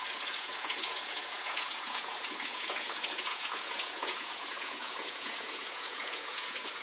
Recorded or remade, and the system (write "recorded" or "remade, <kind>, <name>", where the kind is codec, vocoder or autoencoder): remade, vocoder, Vocos